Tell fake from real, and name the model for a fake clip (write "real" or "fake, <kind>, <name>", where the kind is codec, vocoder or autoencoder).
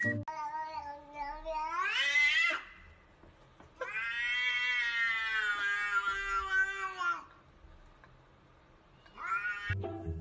real